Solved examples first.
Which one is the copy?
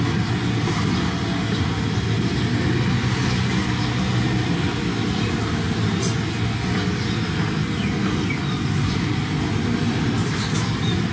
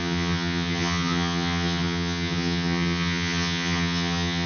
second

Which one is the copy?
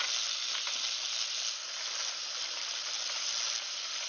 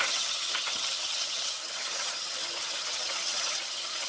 second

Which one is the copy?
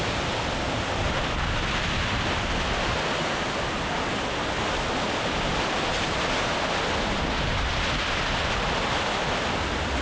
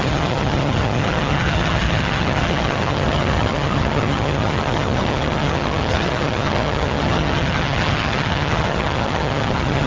second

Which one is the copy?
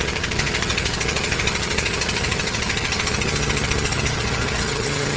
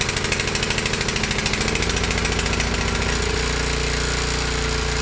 first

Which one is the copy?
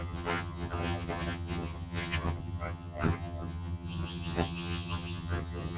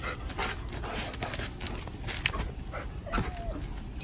first